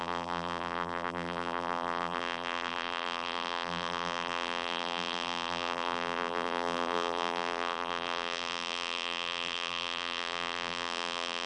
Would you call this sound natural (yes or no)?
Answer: no